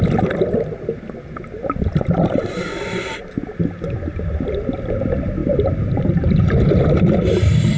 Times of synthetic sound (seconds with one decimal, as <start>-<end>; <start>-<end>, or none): none